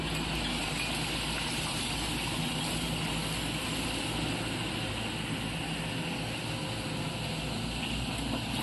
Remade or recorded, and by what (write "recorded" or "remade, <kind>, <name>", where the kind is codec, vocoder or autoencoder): recorded